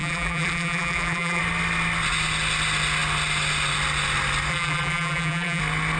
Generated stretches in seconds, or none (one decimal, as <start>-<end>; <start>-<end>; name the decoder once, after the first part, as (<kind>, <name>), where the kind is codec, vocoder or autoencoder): 0.0-1.4 (vocoder, BigVGAN v2); 4.5-5.6